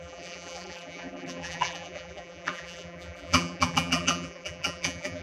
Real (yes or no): no